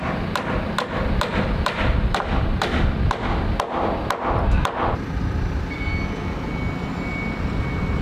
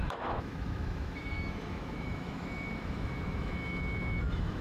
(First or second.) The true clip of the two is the first